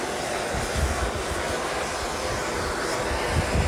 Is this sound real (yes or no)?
yes